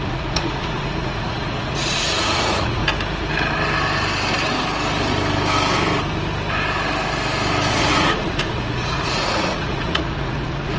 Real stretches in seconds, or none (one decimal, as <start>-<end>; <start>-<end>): 2.8-7.7

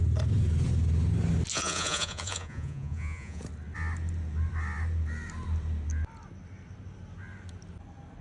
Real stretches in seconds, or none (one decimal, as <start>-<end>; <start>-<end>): 0.0-1.5; 3.4-8.2

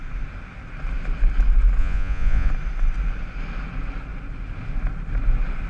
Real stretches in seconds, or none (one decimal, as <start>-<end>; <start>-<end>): 0.0-1.8; 2.5-5.7

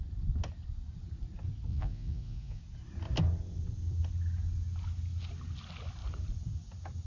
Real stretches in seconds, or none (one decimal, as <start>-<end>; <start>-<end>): 0.0-1.7; 2.6-7.1